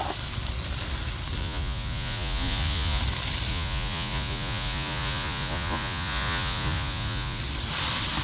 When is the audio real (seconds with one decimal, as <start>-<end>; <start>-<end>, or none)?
0.0-1.4; 3.0-3.5; 7.4-8.2